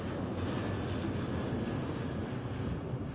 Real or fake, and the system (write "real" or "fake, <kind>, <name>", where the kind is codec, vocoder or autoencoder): real